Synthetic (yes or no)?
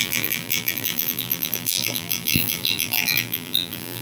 yes